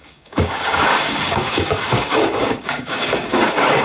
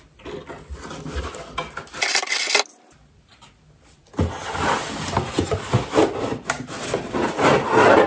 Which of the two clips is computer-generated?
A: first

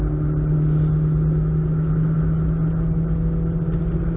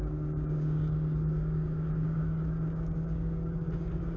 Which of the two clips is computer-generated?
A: second